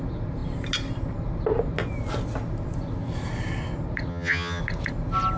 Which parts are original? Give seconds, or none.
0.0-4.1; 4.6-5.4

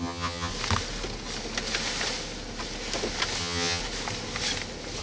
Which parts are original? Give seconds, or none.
0.5-3.4; 3.8-5.0

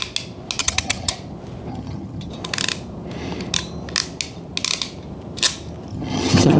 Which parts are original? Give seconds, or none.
0.0-0.6; 1.1-1.7; 2.3-5.9

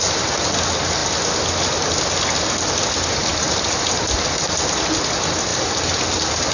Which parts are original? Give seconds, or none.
0.0-6.5

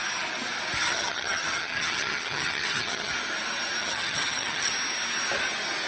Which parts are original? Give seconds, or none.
0.0-0.8; 3.1-3.8; 4.7-5.9

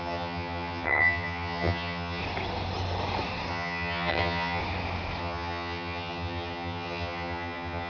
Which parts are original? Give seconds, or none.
2.2-3.5; 4.6-5.2